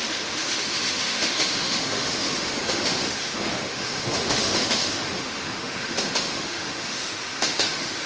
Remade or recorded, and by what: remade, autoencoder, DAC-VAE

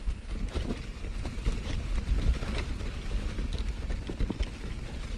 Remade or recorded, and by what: recorded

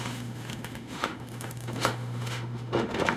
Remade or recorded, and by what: remade, autoencoder, DAC-VAE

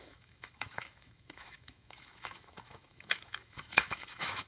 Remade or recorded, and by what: remade, autoencoder, DAC-VAE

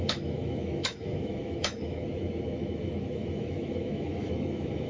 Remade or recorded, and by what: remade, autoencoder, DAC-VAE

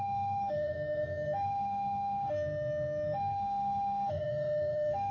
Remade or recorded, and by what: remade, autoencoder, DAC-VAE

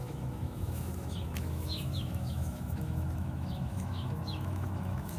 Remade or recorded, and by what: remade, autoencoder, DAC-VAE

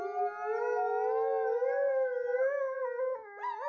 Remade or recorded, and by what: recorded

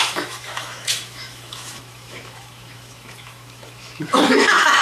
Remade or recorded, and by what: remade, autoencoder, DAC-VAE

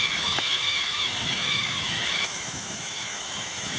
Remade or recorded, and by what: remade, autoencoder, DAC-VAE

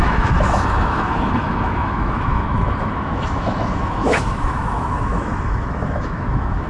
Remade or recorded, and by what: remade, autoencoder, DAC-VAE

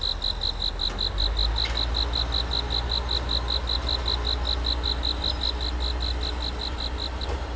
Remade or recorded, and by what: recorded